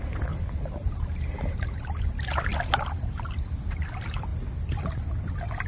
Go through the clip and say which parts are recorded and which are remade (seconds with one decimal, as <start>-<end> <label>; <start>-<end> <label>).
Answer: 0.0-5.7 recorded